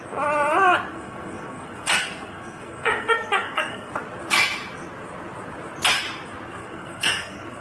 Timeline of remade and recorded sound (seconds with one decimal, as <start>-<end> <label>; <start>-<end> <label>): 0.0-0.9 recorded; 0.9-3.9 remade; 3.9-6.6 recorded; 6.6-7.6 remade